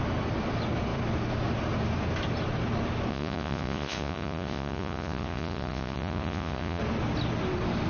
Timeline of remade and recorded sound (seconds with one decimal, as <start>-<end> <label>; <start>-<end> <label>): 0.0-3.1 recorded; 3.1-6.8 remade; 6.8-7.9 recorded